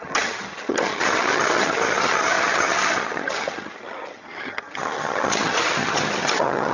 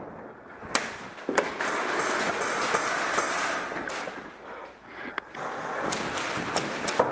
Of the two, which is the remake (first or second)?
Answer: first